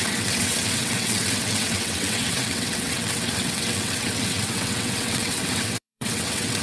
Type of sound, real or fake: fake